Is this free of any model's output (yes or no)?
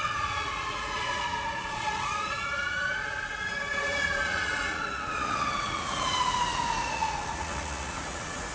no